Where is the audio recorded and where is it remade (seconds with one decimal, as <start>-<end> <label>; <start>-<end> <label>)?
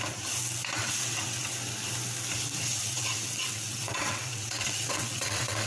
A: 0.0-0.8 recorded; 0.8-1.5 remade; 1.5-2.7 recorded; 2.7-5.7 remade